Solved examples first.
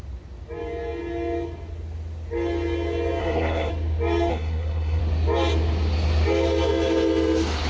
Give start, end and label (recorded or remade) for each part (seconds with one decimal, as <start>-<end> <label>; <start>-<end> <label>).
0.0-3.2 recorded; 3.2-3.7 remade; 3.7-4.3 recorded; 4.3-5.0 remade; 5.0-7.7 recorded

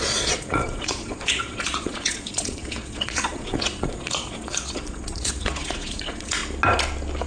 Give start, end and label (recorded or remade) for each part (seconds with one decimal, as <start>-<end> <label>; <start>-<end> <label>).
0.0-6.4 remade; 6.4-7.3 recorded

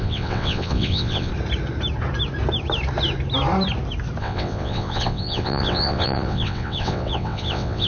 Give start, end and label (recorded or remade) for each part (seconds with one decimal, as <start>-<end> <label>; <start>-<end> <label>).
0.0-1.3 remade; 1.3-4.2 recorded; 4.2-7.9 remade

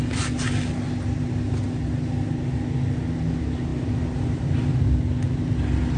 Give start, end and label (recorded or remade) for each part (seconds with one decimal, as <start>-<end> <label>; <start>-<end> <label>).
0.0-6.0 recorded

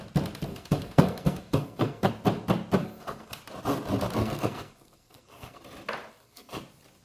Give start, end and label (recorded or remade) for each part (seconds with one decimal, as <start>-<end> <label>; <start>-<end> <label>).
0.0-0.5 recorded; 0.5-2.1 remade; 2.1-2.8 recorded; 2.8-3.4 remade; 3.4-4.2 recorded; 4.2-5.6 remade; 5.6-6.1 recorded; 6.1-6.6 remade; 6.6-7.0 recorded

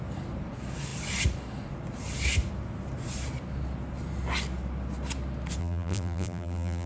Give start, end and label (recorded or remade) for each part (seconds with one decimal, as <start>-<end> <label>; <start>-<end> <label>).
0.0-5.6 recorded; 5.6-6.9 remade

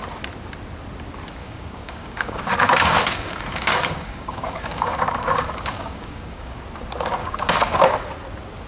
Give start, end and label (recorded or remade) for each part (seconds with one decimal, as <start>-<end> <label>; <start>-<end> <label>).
0.0-1.4 recorded; 1.4-6.6 remade; 6.6-7.2 recorded; 7.2-7.8 remade; 7.8-8.7 recorded

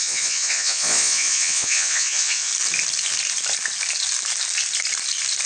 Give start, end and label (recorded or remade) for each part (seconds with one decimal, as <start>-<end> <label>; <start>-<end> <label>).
0.0-2.5 remade; 2.5-5.5 recorded